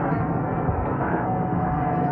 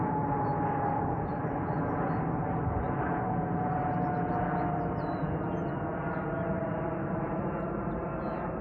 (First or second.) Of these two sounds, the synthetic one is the first